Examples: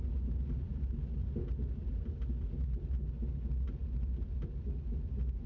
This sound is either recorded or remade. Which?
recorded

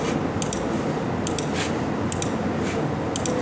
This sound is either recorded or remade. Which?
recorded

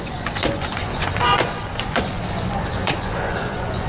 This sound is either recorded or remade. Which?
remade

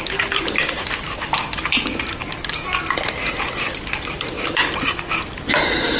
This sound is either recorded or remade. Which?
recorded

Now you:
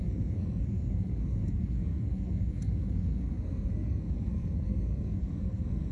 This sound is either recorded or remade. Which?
remade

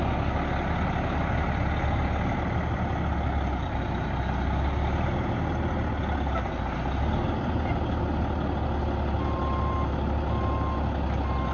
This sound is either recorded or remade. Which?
recorded